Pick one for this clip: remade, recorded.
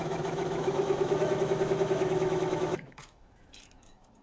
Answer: remade